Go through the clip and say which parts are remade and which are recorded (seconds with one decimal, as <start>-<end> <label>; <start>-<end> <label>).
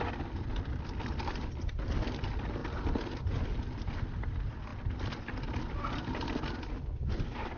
0.0-7.6 recorded